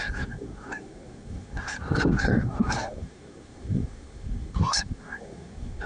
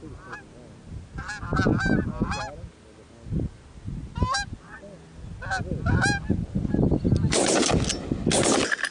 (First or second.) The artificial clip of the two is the first